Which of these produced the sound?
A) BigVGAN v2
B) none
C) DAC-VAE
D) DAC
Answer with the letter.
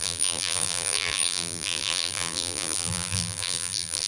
A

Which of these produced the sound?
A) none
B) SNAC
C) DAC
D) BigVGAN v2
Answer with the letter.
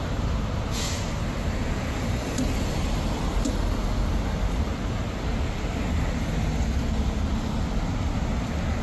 A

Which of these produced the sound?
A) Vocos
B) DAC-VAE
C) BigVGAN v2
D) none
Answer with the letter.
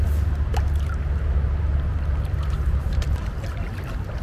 D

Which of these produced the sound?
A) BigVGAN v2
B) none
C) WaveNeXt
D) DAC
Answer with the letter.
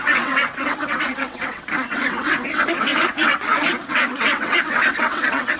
C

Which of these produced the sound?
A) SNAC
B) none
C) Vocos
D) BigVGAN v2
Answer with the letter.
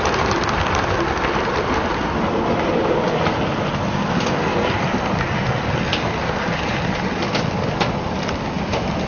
B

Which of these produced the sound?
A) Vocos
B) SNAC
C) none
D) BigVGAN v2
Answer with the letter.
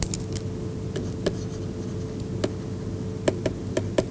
C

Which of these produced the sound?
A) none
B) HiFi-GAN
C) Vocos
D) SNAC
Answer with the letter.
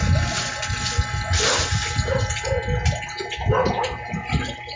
A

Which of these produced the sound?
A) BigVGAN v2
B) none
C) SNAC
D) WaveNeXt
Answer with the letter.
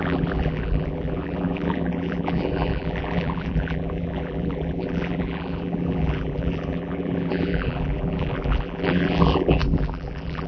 A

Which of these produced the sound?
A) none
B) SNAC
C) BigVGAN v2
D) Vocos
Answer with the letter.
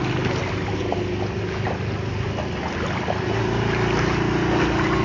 A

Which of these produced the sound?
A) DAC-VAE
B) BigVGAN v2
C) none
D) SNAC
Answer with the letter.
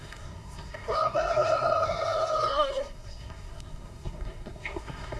D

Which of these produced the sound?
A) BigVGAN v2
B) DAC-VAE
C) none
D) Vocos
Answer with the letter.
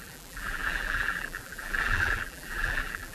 A